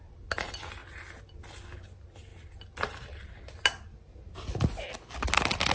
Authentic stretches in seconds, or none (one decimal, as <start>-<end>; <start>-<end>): 0.0-5.7